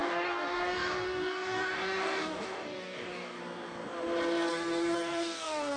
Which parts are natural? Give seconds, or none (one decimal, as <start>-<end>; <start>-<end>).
3.4-4.5